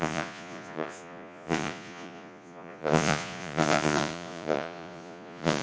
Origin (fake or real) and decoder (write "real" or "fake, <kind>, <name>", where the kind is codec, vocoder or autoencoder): fake, vocoder, Vocos